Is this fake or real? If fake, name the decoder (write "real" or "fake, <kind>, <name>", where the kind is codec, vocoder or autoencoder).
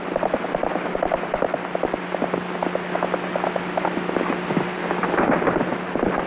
real